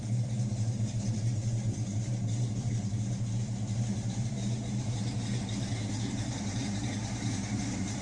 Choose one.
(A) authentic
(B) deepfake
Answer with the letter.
B